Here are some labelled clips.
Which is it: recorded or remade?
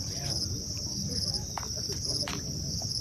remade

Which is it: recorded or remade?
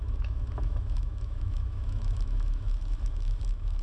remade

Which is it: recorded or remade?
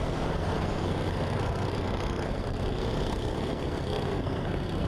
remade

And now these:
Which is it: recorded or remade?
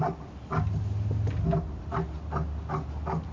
recorded